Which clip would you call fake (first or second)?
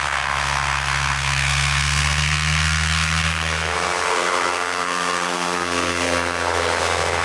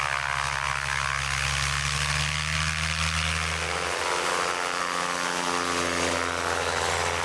first